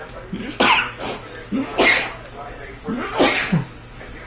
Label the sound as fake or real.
real